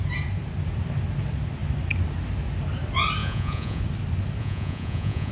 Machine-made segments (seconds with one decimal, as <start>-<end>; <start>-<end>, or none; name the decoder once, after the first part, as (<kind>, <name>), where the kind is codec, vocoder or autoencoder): 3.2-3.8 (vocoder, Vocos); 4.4-5.3